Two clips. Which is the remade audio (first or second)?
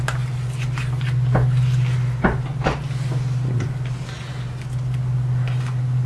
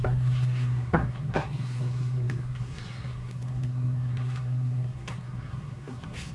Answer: second